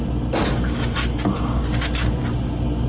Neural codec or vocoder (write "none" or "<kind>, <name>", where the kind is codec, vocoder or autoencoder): none